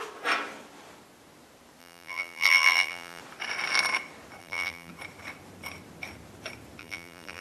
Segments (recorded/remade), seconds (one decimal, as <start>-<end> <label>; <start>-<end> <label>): 0.0-1.8 recorded; 1.8-3.2 remade; 3.2-4.4 recorded; 4.4-4.9 remade; 4.9-6.8 recorded; 6.8-7.4 remade